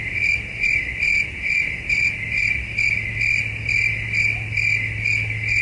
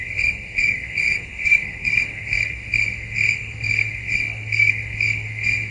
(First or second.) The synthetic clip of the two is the second